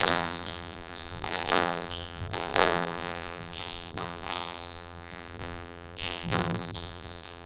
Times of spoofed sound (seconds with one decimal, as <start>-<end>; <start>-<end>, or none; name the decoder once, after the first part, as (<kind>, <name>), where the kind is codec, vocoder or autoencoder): 0.0-7.5 (vocoder, BigVGAN v2)